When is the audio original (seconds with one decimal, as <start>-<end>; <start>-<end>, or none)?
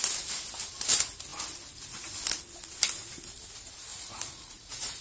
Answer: 0.0-3.9